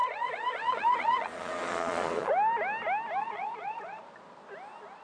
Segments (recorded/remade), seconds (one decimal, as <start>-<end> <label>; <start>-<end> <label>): 0.0-2.3 remade; 2.3-3.2 recorded; 3.2-4.0 remade; 4.0-5.0 recorded